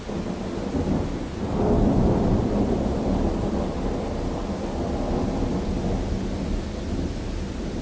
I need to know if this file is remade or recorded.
recorded